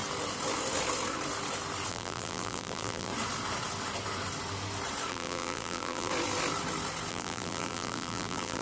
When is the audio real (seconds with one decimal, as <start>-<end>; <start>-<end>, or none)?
0.0-1.9; 3.1-5.1; 6.1-7.1